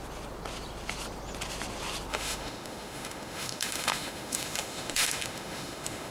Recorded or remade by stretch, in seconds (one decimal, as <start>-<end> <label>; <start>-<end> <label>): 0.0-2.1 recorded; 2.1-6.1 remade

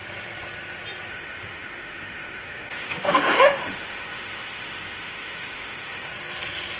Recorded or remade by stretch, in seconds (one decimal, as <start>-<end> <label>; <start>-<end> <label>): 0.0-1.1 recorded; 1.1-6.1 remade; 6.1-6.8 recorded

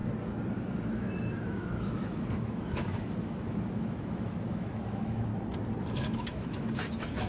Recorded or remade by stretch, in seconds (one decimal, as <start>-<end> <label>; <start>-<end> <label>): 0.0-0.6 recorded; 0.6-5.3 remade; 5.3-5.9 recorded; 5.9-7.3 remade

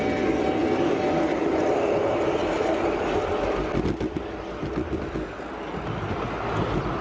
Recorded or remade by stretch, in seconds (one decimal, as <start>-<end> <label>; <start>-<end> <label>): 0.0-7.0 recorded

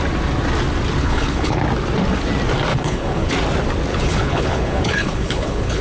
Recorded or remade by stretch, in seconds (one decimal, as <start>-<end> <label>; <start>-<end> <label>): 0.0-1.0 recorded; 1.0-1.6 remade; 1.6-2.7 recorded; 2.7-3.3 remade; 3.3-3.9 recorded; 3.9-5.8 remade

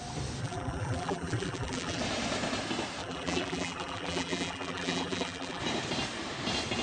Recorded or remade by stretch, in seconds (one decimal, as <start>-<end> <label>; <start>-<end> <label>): 0.0-0.4 recorded; 0.4-2.0 remade; 2.0-3.0 recorded; 3.0-5.6 remade; 5.6-6.8 recorded

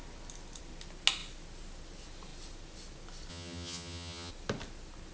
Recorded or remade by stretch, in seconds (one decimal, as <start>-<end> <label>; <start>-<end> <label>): 0.0-3.3 recorded; 3.3-4.3 remade; 4.3-5.1 recorded